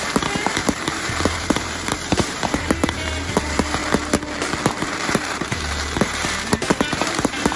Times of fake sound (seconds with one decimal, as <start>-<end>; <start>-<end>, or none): 0.0-3.8; 4.7-7.6